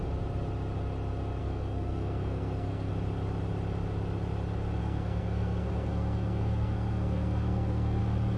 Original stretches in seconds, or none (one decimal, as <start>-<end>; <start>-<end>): 0.0-1.4; 2.9-4.8; 8.0-8.4

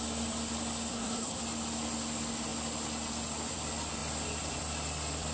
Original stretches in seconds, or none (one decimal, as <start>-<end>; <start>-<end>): 0.0-0.9; 1.4-5.3